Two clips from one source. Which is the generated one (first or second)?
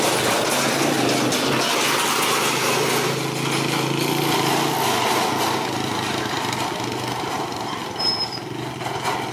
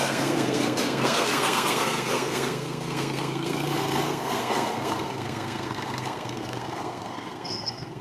second